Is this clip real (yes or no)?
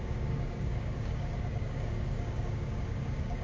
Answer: no